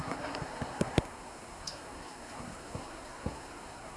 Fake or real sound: fake